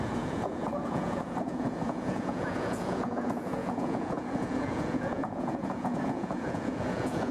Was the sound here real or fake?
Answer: fake